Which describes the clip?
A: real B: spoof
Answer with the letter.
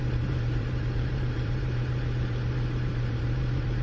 B